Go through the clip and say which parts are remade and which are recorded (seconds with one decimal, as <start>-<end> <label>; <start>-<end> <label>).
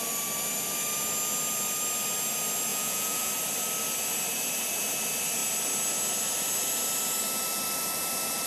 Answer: 0.0-2.7 recorded; 2.7-3.3 remade; 3.3-8.5 recorded